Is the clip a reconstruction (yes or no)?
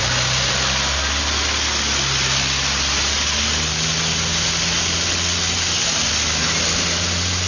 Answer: no